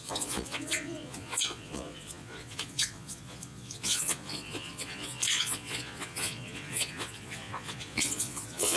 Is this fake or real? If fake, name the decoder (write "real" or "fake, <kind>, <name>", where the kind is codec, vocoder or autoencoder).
fake, vocoder, Vocos